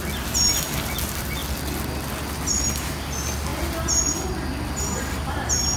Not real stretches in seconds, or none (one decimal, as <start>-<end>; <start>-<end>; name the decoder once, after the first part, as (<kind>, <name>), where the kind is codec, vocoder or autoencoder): none